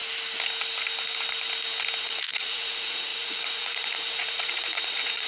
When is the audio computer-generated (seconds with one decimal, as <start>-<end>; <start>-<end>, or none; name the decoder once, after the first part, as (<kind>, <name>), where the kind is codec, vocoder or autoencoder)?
2.0-5.3 (vocoder, Vocos)